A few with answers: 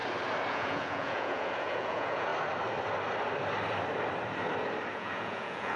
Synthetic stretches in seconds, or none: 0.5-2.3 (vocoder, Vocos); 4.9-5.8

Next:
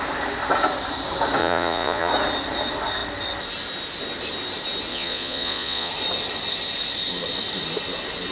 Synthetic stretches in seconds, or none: 1.4-2.1 (vocoder, Vocos); 4.9-5.9

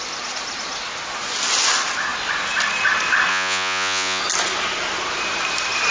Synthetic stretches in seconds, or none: 3.3-4.2 (vocoder, Vocos)

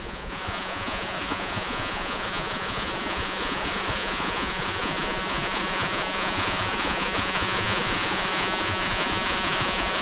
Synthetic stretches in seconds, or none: 0.0-10.0 (vocoder, Vocos)